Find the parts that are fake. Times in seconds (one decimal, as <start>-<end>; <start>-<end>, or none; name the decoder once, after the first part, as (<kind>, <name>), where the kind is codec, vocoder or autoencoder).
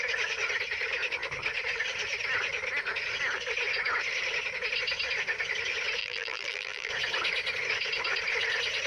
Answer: 6.0-6.9 (vocoder, BigVGAN v2)